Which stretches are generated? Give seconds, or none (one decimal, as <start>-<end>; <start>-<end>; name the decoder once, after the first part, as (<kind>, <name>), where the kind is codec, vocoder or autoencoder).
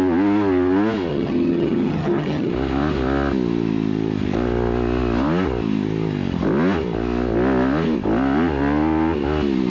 1.1-2.5 (vocoder, HiFi-GAN)